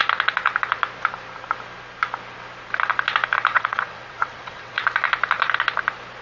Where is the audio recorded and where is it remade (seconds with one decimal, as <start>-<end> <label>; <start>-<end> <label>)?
0.0-3.5 recorded; 3.5-4.8 remade; 4.8-6.2 recorded